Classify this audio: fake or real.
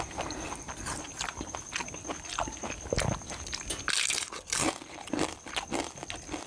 real